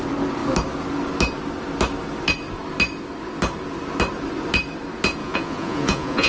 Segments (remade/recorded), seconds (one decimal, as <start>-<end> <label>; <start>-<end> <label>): 0.0-5.2 recorded; 5.2-6.3 remade